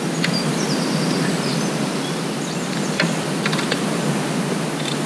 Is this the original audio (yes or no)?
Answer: yes